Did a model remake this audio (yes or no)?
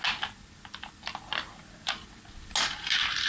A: no